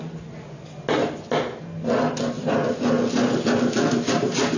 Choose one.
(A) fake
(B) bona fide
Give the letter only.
B